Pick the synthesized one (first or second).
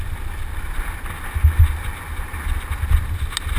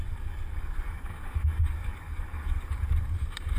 second